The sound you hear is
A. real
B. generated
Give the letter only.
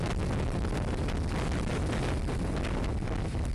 A